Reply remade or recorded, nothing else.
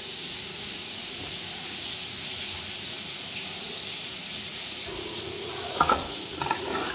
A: remade